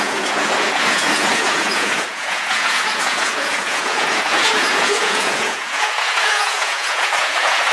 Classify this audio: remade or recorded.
remade